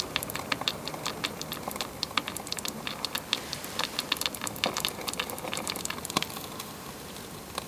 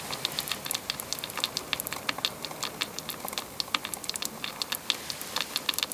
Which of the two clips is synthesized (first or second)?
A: first